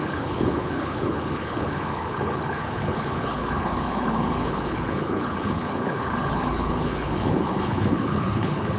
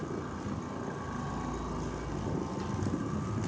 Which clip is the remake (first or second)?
first